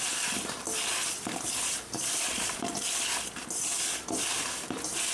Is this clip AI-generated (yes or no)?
no